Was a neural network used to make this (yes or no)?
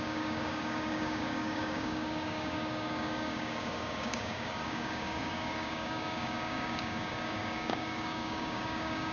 yes